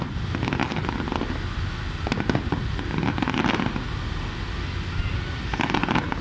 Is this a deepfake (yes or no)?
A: no